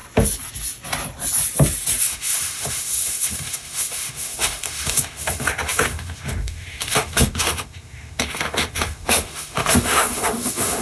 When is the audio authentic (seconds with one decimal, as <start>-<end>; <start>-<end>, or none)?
0.0-2.0